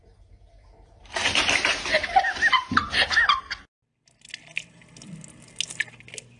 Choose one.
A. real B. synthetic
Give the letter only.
A